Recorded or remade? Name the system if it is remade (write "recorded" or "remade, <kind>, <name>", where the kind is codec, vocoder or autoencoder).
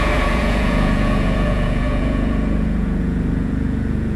remade, vocoder, Vocos